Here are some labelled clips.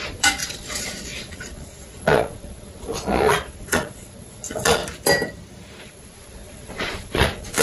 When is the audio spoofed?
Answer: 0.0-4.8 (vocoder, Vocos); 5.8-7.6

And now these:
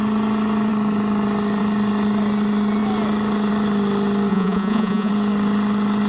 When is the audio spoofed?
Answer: 4.3-5.1 (vocoder, Vocos)

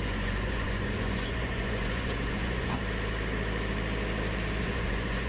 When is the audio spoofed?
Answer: 0.0-2.8 (vocoder, Vocos); 4.6-5.3

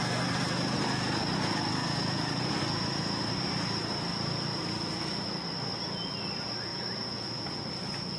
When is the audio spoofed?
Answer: 1.8-2.6 (vocoder, Vocos); 6.7-8.2